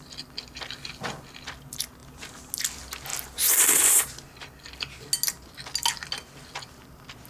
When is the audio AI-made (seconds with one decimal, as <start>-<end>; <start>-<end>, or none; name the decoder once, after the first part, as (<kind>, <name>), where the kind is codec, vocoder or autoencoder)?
none